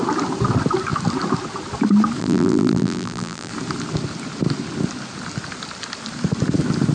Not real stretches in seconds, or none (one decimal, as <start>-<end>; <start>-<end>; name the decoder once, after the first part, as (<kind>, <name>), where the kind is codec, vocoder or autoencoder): 2.2-3.5 (vocoder, BigVGAN v2)